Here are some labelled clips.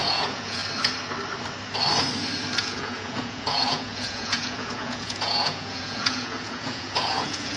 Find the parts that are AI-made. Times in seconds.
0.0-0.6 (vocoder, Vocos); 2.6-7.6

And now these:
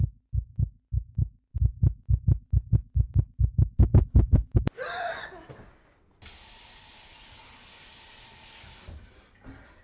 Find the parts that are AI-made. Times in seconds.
none

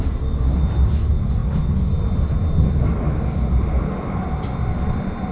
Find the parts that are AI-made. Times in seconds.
none

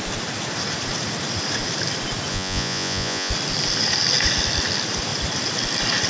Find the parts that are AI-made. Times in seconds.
2.3-3.3 (vocoder, Vocos)

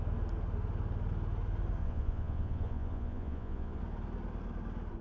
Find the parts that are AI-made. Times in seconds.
1.8-3.8 (vocoder, Vocos)